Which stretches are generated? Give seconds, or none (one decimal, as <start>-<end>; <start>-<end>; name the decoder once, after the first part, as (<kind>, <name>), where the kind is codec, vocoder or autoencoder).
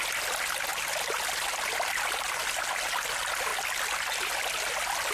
0.7-2.4 (vocoder, BigVGAN v2)